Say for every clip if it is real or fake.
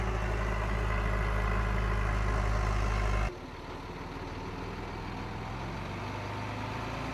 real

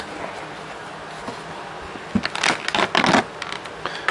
real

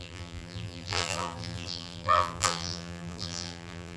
fake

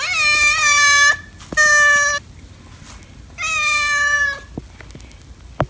real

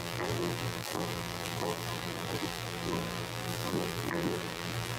fake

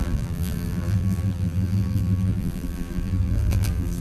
fake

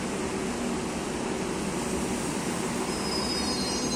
real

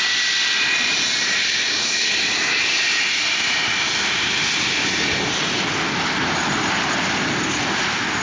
fake